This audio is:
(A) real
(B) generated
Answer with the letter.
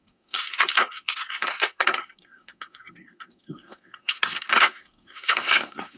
B